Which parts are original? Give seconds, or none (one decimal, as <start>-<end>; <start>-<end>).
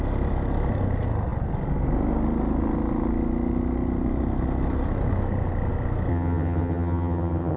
0.0-6.1